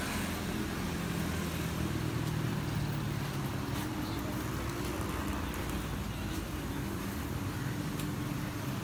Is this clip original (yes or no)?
yes